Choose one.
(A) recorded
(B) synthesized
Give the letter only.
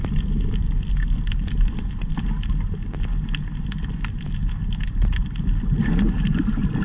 A